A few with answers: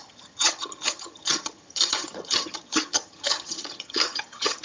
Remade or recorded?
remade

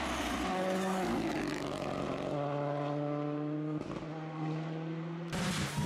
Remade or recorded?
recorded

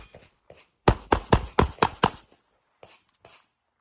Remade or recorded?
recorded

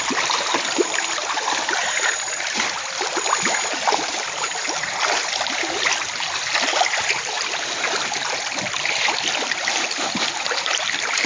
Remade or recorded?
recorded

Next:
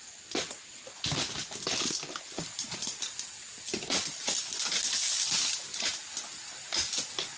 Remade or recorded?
recorded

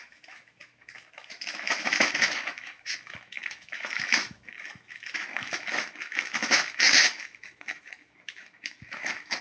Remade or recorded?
remade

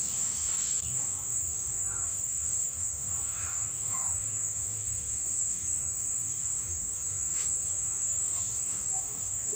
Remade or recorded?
remade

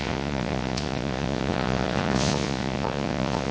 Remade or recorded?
remade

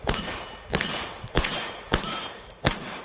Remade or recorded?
remade